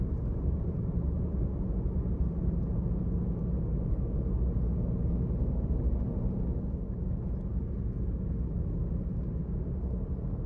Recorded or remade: recorded